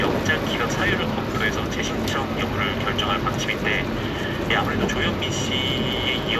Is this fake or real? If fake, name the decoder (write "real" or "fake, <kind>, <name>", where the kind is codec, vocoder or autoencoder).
real